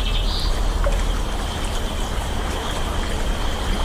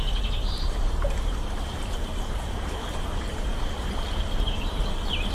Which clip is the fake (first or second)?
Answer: second